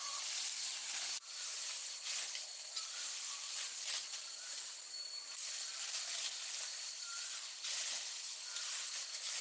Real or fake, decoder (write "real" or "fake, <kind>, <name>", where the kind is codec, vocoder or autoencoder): real